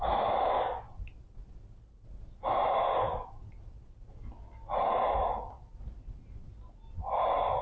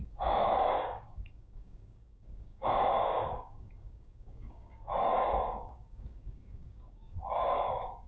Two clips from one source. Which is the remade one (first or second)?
second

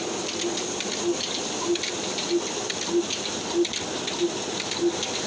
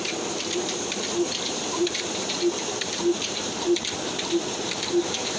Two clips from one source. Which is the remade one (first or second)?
second